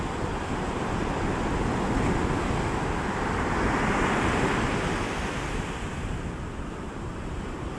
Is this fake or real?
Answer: real